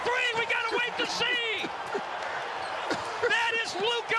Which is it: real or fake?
real